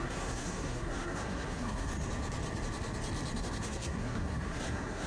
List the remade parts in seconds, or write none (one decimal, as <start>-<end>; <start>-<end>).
0.0-1.9; 3.4-5.1